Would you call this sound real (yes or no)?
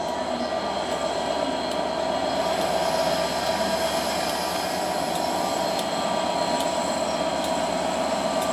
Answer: yes